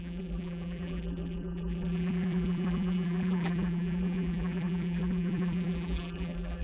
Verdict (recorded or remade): remade